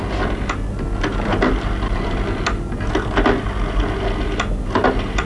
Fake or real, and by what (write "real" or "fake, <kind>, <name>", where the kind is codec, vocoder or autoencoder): real